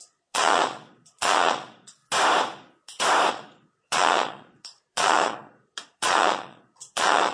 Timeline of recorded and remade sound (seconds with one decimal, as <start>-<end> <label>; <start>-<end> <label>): 0.0-2.0 remade; 2.0-3.3 recorded; 3.3-7.3 remade